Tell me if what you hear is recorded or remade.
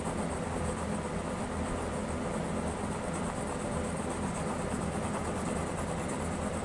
recorded